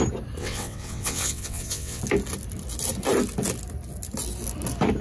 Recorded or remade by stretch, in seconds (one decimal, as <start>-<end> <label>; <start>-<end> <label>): 0.0-0.4 recorded; 0.4-2.0 remade; 2.0-5.0 recorded